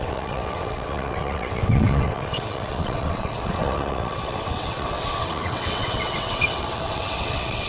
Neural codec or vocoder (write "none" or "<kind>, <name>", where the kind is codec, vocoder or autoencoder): vocoder, WaveNeXt